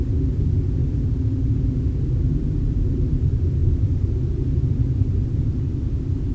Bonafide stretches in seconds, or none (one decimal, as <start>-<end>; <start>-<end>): 0.8-2.8